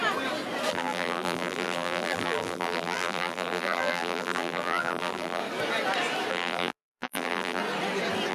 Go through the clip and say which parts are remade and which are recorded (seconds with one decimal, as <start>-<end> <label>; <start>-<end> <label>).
0.0-0.7 recorded; 0.7-5.4 remade; 5.4-6.3 recorded; 6.3-7.6 remade; 7.6-8.3 recorded